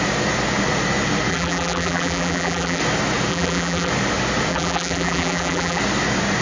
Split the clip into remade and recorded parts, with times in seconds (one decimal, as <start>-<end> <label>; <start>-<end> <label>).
0.0-1.3 recorded; 1.3-2.8 remade; 2.8-3.3 recorded; 3.3-3.9 remade; 3.9-4.5 recorded; 4.5-5.8 remade; 5.8-6.4 recorded